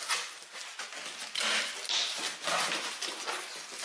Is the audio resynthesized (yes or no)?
no